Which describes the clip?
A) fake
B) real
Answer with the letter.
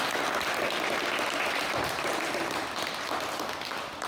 B